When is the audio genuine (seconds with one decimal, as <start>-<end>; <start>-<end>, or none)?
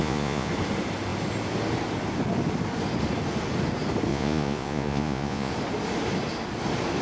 0.5-4.1; 5.5-7.0